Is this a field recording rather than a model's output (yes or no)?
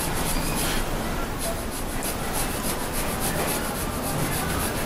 yes